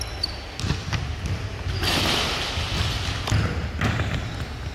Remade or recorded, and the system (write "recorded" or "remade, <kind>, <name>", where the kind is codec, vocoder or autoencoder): recorded